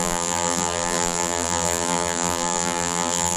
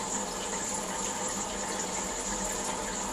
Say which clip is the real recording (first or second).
second